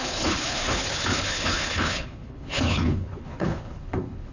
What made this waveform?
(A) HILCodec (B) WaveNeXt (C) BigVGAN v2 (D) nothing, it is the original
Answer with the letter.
A